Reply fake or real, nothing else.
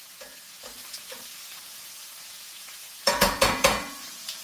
fake